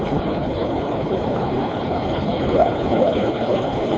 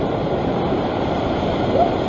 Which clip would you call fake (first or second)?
first